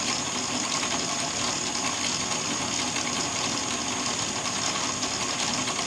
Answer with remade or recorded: recorded